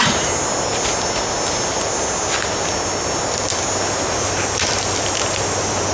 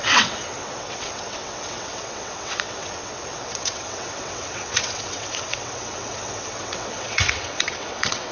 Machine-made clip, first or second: second